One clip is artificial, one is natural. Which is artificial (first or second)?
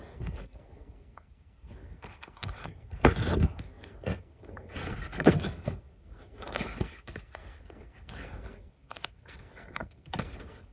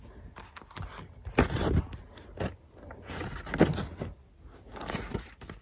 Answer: first